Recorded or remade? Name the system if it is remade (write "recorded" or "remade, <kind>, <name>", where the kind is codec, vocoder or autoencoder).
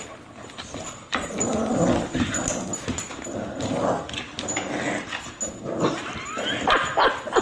recorded